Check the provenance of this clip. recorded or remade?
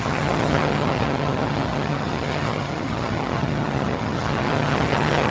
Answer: remade